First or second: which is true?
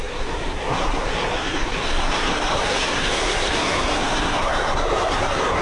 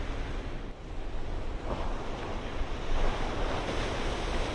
second